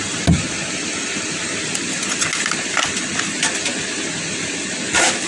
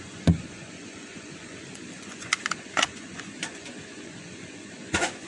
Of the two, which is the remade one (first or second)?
second